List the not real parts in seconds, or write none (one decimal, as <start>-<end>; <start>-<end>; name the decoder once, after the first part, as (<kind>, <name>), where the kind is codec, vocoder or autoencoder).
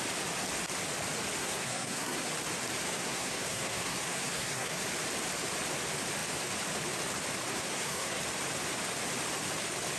1.4-2.3 (codec, SNAC); 2.9-4.9; 7.5-8.2